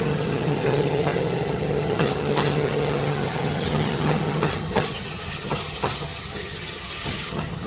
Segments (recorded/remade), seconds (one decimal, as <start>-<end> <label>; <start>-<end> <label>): 0.0-7.7 remade